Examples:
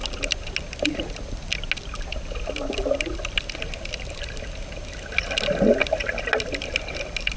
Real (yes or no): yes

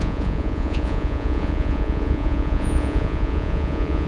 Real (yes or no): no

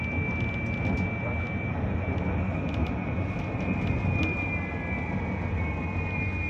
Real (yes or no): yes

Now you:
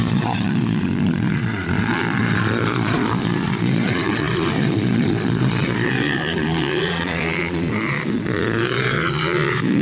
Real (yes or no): no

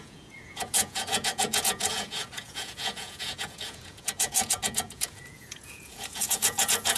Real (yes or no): no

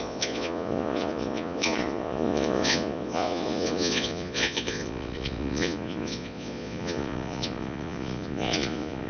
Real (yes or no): no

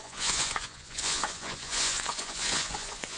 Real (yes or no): no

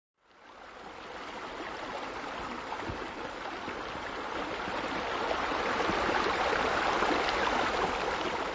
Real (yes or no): yes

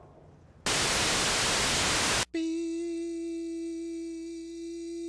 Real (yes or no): yes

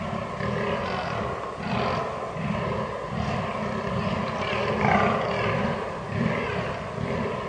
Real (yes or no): yes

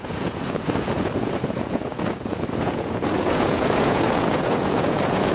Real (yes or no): no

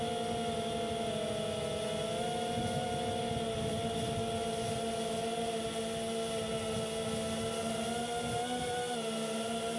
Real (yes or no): yes